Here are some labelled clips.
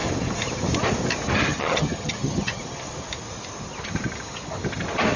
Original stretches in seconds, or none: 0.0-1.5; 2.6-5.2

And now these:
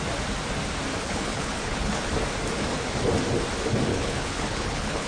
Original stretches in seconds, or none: 0.0-1.0; 2.0-3.9

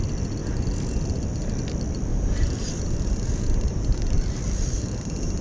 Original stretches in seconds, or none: 0.0-2.1

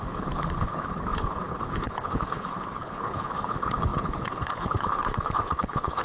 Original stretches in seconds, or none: none